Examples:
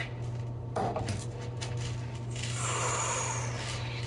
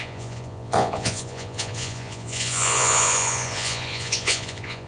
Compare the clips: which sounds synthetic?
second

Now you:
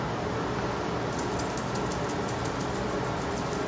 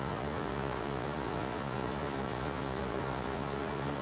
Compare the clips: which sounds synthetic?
second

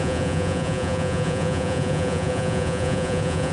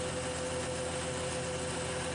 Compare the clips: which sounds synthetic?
first